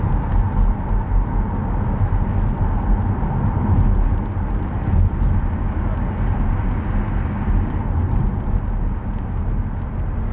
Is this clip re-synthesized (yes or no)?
no